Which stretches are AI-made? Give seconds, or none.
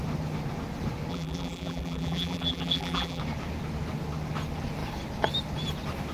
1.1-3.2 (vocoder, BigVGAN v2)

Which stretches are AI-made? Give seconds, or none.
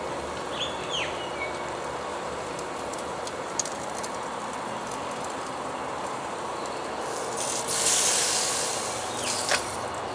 2.1-3.7 (vocoder, BigVGAN v2)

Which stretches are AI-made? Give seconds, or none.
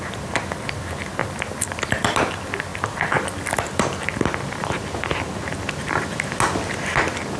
1.2-1.9 (vocoder, BigVGAN v2)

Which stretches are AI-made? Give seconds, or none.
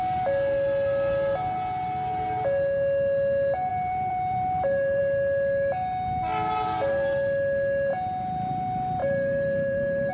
3.7-5.0 (vocoder, BigVGAN v2); 9.0-10.1